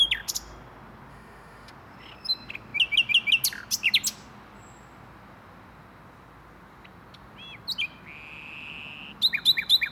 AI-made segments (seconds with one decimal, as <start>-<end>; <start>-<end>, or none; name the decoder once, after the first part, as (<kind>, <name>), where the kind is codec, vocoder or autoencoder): 1.1-1.7 (autoencoder, DAC-VAE)